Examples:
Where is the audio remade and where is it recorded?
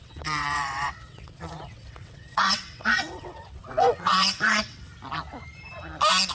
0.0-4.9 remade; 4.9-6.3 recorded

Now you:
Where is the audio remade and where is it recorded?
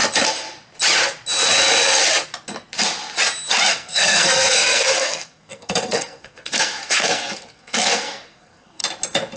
0.0-3.7 recorded; 3.7-8.8 remade; 8.8-9.4 recorded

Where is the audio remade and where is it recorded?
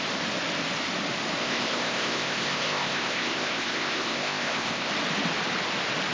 0.0-1.4 recorded; 1.4-4.9 remade; 4.9-6.1 recorded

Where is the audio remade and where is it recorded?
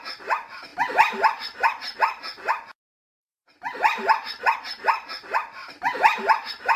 0.0-2.9 recorded; 2.9-4.4 remade; 4.4-5.6 recorded; 5.6-6.8 remade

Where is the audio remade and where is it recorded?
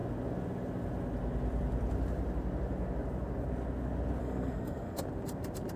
0.0-4.2 recorded; 4.2-5.0 remade; 5.0-5.8 recorded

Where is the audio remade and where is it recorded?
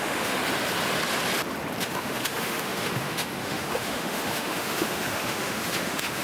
0.0-0.4 remade; 0.4-1.8 recorded; 1.8-6.2 remade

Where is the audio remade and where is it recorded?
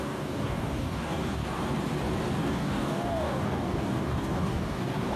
0.0-1.4 remade; 1.4-2.4 recorded; 2.4-5.2 remade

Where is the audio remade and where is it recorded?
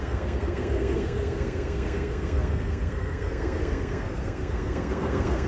0.0-5.5 remade